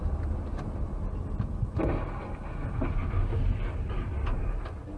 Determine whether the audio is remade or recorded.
recorded